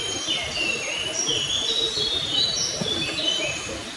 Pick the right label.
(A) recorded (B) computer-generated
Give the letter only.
A